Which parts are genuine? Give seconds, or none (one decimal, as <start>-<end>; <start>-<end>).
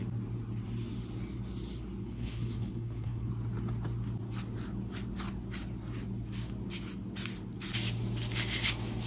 0.0-2.0; 3.3-9.1